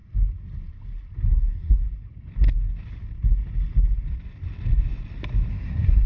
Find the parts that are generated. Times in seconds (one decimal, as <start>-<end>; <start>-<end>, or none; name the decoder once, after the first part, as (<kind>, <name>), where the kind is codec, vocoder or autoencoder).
1.3-1.8 (codec, SNAC); 5.5-6.1